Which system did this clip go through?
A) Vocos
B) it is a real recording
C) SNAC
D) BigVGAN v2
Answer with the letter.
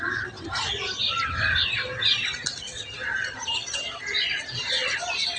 B